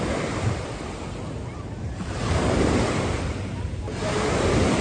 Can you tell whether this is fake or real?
real